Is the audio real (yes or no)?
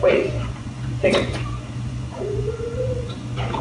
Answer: no